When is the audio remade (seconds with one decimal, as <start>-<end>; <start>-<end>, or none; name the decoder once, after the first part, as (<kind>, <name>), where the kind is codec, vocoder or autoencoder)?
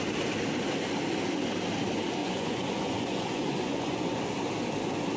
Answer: 2.2-4.2 (vocoder, Vocos)